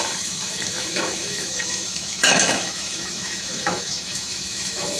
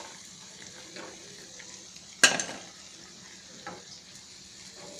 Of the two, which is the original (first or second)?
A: second